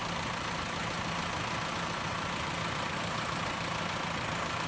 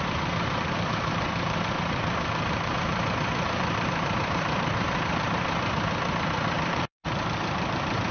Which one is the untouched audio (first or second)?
first